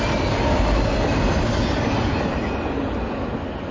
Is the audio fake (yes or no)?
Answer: no